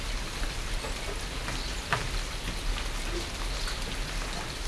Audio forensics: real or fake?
real